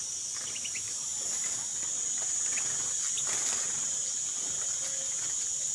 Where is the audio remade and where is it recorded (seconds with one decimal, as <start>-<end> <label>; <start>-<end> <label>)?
0.0-5.7 recorded